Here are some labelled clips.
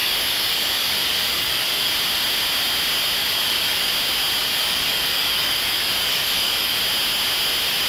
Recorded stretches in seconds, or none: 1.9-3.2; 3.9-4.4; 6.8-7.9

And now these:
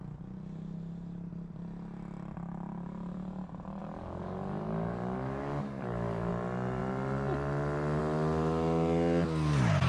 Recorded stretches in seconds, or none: 0.0-3.8; 6.3-9.9

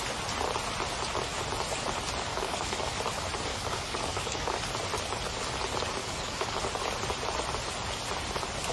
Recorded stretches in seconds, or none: 0.0-2.3; 2.9-3.5; 4.7-6.0; 6.6-8.7

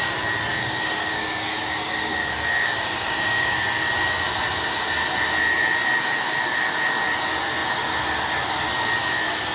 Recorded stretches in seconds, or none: 0.0-0.5; 3.9-9.5

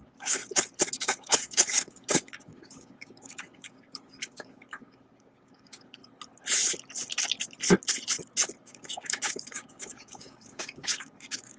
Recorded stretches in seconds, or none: 0.4-0.9; 6.0-8.6

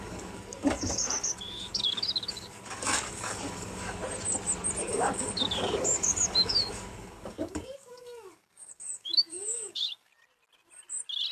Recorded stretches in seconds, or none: 4.0-4.8; 10.1-11.3

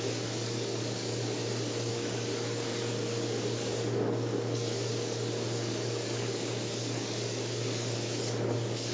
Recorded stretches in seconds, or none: 1.4-1.9